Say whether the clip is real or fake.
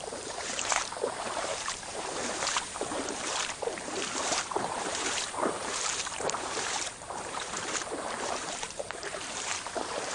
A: fake